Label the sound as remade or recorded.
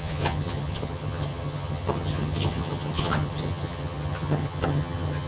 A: remade